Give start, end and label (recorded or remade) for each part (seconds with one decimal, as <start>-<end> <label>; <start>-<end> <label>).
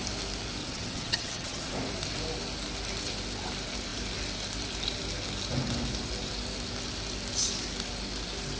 0.0-0.6 recorded; 0.6-1.7 remade; 1.7-8.6 recorded